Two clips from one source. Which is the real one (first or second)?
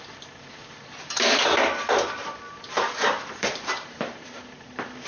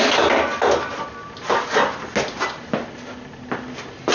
second